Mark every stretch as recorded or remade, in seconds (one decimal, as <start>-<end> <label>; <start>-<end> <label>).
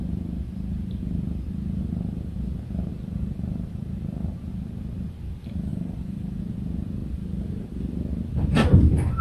0.0-2.9 recorded; 2.9-4.5 remade; 4.5-5.7 recorded; 5.7-6.4 remade; 6.4-9.2 recorded